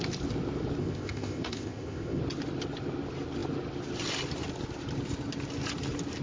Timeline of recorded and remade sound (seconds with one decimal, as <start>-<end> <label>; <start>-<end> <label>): 0.0-0.8 recorded; 0.8-2.2 remade; 2.2-6.2 recorded